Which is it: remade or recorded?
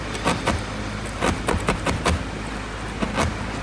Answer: recorded